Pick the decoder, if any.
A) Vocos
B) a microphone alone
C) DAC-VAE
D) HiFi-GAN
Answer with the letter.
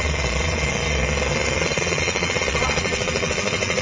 A